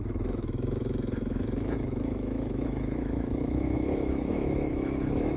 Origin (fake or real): fake